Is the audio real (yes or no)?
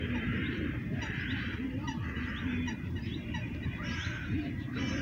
no